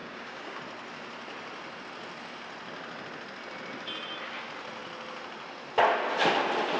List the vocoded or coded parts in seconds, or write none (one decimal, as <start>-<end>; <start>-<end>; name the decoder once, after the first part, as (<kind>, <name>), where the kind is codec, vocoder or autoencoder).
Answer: 0.0-0.6 (codec, DAC)